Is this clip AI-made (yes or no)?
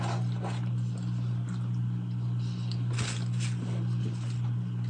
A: no